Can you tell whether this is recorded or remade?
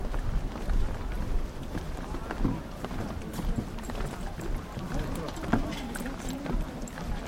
recorded